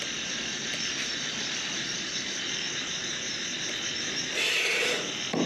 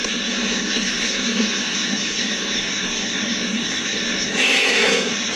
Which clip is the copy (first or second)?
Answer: second